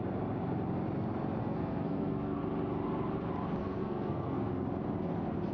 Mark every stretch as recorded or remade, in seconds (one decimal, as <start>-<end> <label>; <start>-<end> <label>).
0.0-1.4 recorded; 1.4-2.4 remade; 2.4-3.6 recorded; 3.6-4.5 remade; 4.5-5.5 recorded